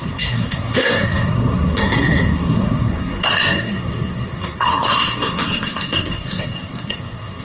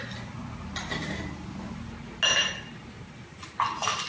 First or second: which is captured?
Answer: second